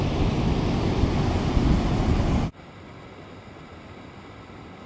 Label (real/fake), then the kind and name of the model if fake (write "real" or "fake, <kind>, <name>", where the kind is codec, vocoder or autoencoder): real